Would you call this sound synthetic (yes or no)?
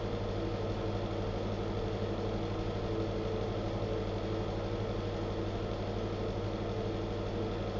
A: no